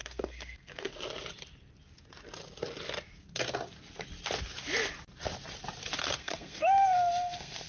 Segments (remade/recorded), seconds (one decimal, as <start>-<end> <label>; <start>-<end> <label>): 0.0-0.9 remade; 0.9-6.2 recorded; 6.2-7.7 remade